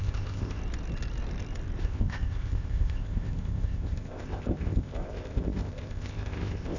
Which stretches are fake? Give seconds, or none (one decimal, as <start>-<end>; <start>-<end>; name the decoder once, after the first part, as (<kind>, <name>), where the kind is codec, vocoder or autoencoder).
0.0-0.6 (codec, ZipCodec); 1.8-6.8